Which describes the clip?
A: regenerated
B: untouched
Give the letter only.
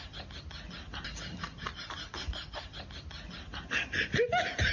B